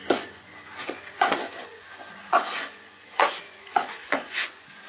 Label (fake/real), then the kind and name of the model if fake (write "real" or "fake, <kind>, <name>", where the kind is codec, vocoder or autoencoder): fake, vocoder, Vocos